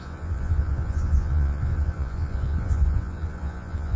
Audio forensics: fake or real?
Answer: fake